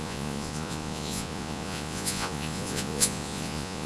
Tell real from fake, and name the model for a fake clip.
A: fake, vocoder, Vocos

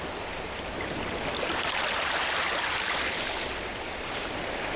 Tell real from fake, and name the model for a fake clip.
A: real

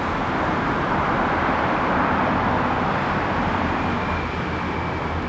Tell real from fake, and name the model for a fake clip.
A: real